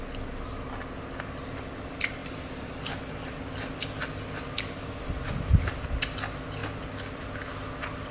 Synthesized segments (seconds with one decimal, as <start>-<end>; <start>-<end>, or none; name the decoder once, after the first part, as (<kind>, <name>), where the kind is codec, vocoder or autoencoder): none